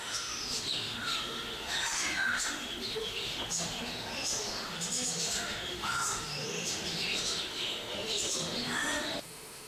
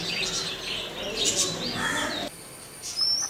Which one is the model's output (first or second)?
first